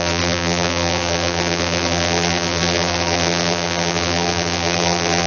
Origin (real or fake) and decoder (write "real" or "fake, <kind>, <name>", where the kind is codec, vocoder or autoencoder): fake, vocoder, BigVGAN v2